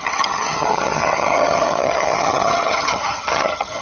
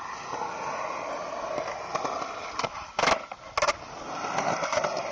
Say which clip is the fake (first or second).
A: first